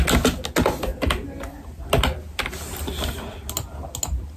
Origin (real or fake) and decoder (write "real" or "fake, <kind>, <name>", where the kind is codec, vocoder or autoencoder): real